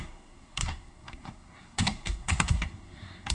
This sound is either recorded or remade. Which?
remade